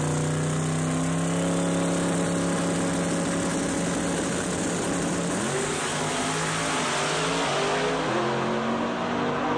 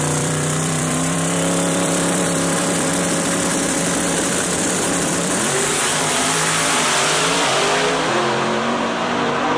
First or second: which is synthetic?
second